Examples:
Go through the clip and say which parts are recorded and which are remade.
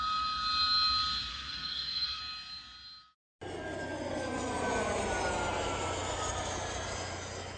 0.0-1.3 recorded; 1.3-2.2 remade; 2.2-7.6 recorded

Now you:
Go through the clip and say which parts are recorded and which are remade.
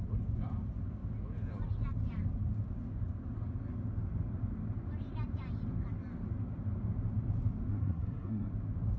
0.0-7.7 recorded; 7.7-8.5 remade; 8.5-9.0 recorded